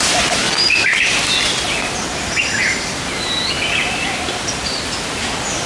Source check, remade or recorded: recorded